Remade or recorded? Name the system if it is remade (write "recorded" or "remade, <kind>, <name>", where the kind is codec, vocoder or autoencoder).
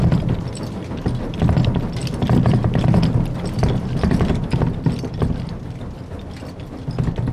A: recorded